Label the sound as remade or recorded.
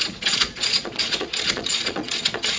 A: remade